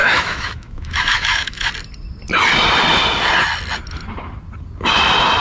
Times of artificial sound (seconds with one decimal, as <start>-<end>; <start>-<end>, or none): 0.0-1.7